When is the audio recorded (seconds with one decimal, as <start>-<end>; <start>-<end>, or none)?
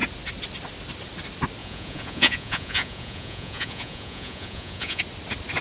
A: 0.0-1.6; 5.0-5.6